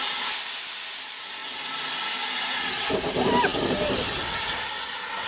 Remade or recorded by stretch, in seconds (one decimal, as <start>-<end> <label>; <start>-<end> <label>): 0.0-1.4 remade; 1.4-2.9 recorded; 2.9-3.5 remade; 3.5-5.3 recorded

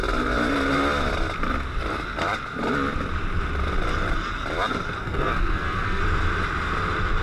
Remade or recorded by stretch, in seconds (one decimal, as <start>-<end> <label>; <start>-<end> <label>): 0.0-5.0 recorded; 5.0-6.0 remade; 6.0-7.2 recorded